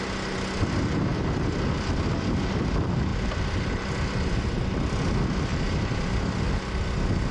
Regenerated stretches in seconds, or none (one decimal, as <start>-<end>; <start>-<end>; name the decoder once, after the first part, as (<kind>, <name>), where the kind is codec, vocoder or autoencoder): 3.1-5.0 (vocoder, BigVGAN v2); 5.5-6.4